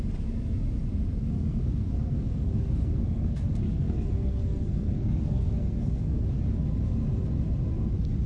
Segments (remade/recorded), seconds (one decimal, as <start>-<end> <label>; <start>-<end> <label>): 0.0-1.2 recorded; 1.2-6.2 remade; 6.2-8.3 recorded